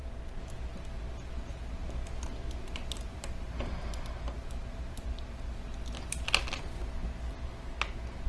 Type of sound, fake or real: real